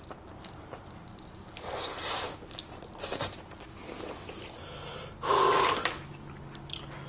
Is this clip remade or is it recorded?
recorded